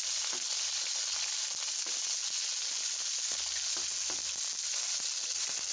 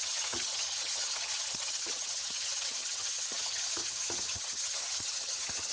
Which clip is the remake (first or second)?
second